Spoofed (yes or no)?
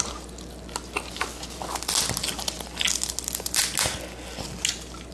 no